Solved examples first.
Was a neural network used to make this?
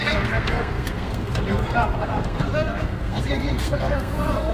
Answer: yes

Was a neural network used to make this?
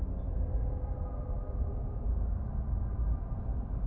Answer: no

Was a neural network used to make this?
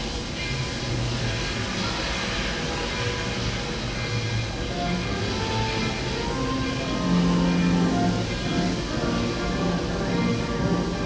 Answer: no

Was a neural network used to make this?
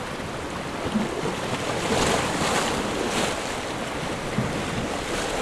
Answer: no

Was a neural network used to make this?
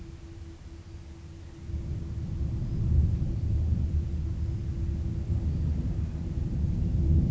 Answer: no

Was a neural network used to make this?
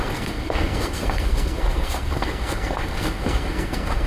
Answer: yes